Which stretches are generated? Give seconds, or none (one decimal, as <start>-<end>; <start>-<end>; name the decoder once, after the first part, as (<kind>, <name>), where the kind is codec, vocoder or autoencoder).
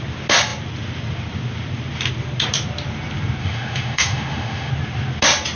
3.4-4.7 (autoencoder, DAC-VAE)